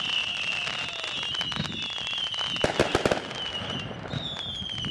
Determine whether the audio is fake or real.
real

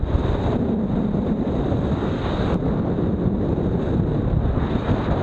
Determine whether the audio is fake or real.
real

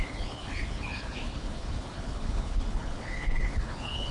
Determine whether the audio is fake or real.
fake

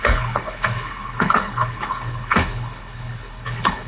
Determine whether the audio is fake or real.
fake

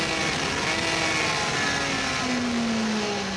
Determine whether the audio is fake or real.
real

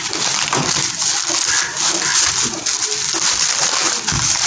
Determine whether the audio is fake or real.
real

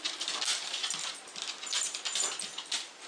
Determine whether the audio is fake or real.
real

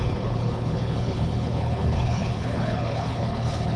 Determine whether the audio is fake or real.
fake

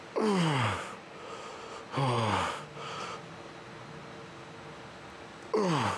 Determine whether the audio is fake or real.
real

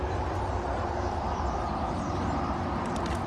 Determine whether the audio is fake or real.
real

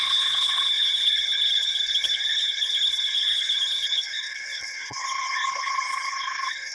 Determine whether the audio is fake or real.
fake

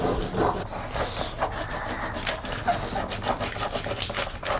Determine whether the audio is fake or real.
real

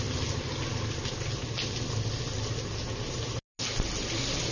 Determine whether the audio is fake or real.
real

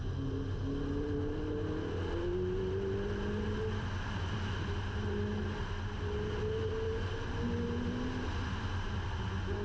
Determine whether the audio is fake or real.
real